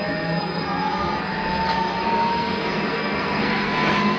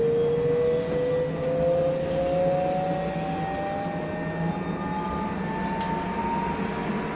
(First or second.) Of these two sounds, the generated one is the first